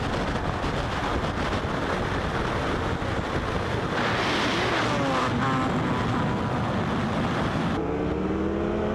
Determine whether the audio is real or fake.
real